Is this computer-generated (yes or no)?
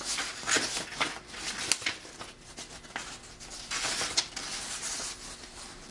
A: no